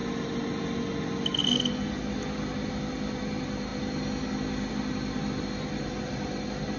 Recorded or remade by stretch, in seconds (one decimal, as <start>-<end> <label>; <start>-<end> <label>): 0.0-6.8 recorded